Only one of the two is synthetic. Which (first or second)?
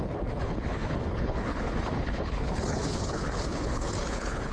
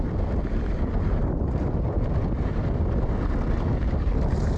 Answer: first